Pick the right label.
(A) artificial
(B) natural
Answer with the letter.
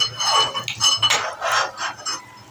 B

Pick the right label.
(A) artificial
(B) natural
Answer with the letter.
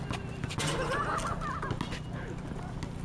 B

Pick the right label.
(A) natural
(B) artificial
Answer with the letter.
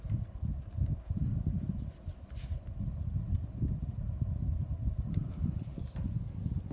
A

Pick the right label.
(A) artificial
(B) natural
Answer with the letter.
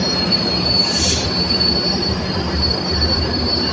A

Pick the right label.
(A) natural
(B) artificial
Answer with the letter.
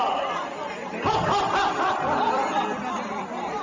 B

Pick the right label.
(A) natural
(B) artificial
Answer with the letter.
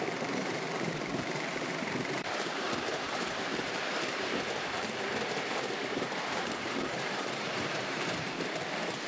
B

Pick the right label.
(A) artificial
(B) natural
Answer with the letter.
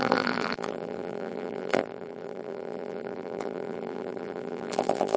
A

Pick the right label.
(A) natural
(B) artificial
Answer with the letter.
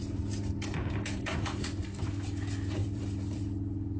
B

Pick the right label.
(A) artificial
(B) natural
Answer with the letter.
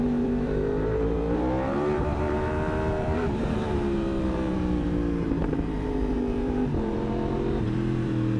A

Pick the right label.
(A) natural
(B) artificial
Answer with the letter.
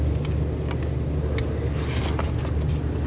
A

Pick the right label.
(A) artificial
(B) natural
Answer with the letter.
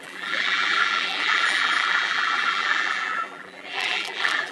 A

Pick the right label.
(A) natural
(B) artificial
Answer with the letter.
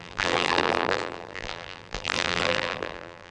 B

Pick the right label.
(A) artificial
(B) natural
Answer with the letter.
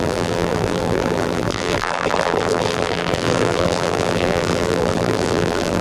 A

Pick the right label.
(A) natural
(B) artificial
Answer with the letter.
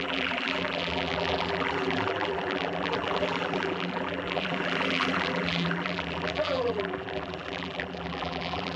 B